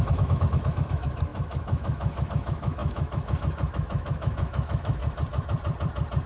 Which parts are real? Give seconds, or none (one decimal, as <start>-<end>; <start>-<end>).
5.0-6.3